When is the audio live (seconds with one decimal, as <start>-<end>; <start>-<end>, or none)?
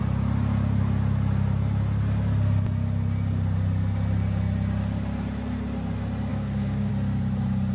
0.0-6.3; 6.9-7.7